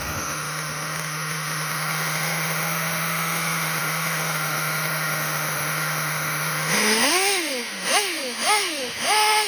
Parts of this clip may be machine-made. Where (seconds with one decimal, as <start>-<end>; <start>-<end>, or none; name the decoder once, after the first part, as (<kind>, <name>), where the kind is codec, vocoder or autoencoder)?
0.0-9.5 (autoencoder, DAC-VAE)